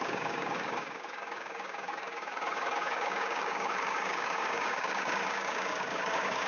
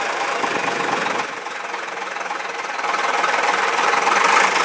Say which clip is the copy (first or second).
first